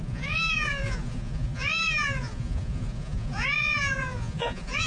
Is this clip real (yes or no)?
no